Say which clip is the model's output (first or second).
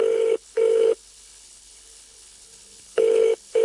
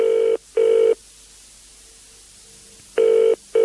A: first